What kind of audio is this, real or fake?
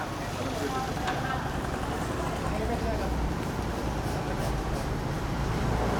real